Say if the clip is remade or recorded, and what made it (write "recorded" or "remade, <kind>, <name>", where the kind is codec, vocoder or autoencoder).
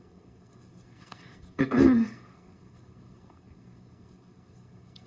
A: remade, codec, SNAC